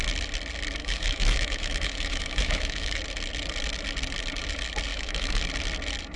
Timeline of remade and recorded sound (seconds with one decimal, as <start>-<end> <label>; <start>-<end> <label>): 0.0-0.8 recorded; 0.8-3.0 remade; 3.0-4.9 recorded; 4.9-5.4 remade; 5.4-6.2 recorded